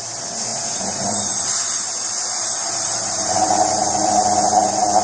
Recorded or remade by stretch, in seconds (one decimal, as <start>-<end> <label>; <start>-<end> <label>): 0.0-0.5 recorded; 0.5-3.5 remade; 3.5-5.0 recorded